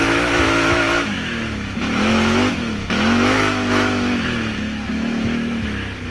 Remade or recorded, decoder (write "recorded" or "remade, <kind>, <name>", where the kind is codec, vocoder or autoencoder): remade, autoencoder, DAC-VAE